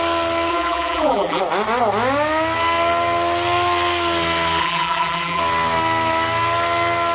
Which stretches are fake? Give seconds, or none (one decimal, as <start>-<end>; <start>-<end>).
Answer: 0.5-1.4; 4.6-5.4